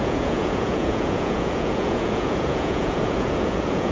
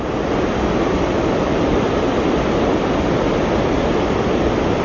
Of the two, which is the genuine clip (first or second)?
second